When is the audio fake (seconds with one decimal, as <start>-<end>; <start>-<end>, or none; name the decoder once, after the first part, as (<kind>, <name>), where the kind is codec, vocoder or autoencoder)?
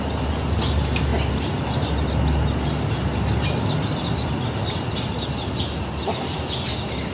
none